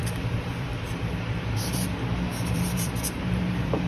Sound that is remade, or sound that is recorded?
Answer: remade